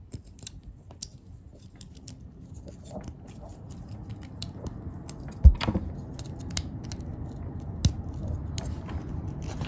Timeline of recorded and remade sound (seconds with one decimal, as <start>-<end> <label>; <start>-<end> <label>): 0.0-9.7 recorded